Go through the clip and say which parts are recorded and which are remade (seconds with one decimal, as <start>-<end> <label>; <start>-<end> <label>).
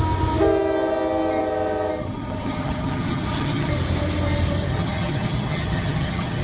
0.0-2.0 recorded; 2.0-3.7 remade; 3.7-4.7 recorded; 4.7-6.4 remade